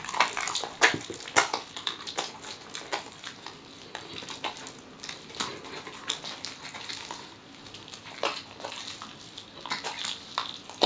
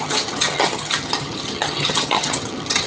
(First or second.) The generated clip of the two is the second